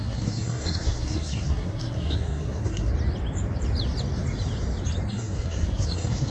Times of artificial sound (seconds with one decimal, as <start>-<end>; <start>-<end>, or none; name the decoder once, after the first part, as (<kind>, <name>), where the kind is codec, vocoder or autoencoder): 0.0-2.9 (codec, SNAC); 5.1-6.3